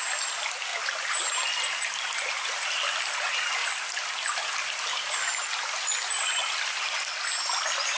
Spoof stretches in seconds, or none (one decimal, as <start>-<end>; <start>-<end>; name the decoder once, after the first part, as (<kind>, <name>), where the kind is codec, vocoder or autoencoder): none